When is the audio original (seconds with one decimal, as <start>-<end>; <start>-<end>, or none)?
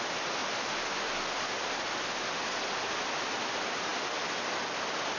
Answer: 0.0-5.2